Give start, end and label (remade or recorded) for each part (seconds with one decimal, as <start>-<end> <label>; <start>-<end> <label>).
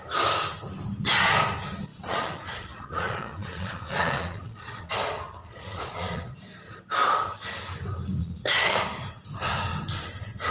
0.0-1.9 recorded; 1.9-4.9 remade; 4.9-5.4 recorded; 5.4-6.2 remade; 6.2-8.2 recorded; 8.2-8.8 remade; 8.8-10.5 recorded